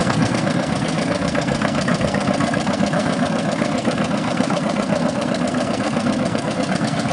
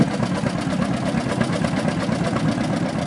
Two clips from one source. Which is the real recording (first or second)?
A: second